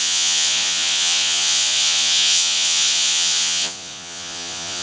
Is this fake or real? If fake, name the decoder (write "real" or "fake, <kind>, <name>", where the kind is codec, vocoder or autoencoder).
fake, vocoder, Vocos